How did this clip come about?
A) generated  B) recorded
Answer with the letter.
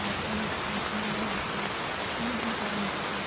B